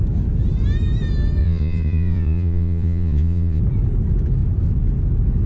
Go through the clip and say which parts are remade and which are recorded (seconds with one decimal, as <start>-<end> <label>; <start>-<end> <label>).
0.0-1.4 recorded; 1.4-3.6 remade; 3.6-5.5 recorded